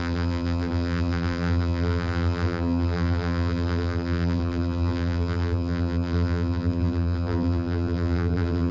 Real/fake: fake